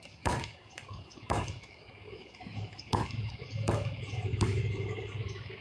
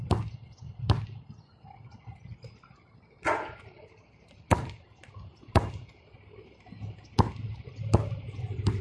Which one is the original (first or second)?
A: second